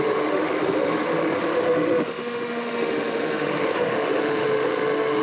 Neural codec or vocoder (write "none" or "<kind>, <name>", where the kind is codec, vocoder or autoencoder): autoencoder, DAC-VAE